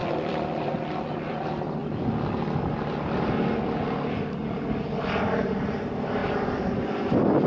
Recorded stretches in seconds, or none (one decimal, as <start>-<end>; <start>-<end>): 0.7-1.8; 2.6-6.2; 7.1-7.5